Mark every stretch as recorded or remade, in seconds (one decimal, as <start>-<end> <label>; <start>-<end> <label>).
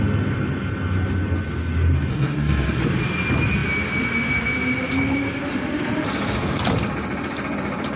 0.0-2.1 recorded; 2.1-2.8 remade; 2.8-8.0 recorded